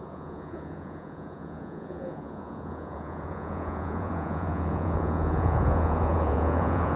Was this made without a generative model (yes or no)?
no